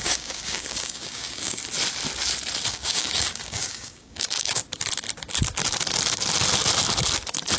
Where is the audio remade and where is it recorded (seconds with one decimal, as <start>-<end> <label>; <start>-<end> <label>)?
0.0-1.6 remade; 1.6-2.7 recorded; 2.7-4.6 remade; 4.6-7.6 recorded